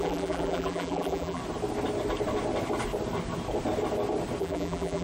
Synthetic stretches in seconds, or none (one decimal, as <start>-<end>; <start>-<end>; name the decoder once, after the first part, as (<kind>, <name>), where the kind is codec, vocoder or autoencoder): 0.0-1.4 (vocoder, BigVGAN v2); 4.4-5.0